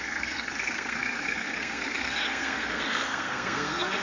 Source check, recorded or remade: remade